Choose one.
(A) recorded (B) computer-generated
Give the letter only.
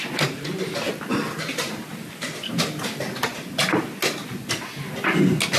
A